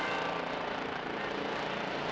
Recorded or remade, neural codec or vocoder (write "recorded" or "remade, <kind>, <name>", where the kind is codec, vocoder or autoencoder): recorded